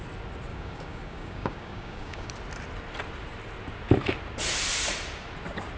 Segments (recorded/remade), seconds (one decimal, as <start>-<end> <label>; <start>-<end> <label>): 0.0-0.5 recorded; 0.5-2.3 remade; 2.3-5.8 recorded